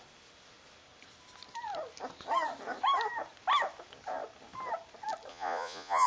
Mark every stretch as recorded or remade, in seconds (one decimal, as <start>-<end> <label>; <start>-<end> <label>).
0.0-5.3 recorded; 5.3-6.1 remade